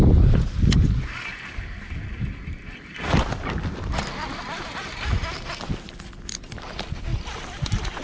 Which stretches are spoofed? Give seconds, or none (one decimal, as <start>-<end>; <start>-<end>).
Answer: none